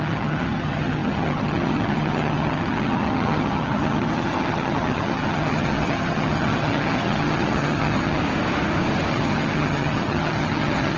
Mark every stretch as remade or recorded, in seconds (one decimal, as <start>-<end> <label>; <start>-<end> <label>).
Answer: 0.0-8.2 remade; 8.2-9.1 recorded; 9.1-11.0 remade